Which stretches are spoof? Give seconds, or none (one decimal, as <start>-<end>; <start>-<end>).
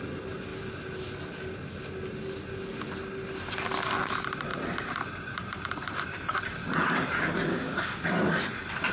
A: 4.5-8.9